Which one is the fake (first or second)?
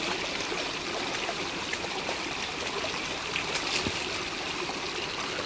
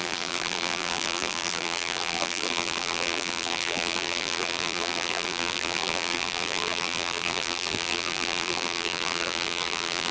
second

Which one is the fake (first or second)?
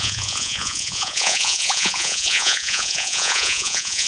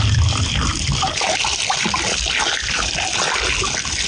first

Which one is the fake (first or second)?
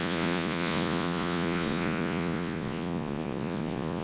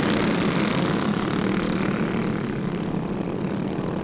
first